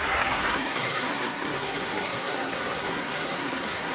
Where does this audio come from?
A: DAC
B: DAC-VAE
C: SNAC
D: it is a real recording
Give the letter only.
C